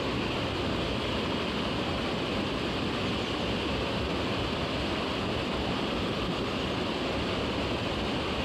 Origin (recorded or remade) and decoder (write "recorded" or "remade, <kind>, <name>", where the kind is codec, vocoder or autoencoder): recorded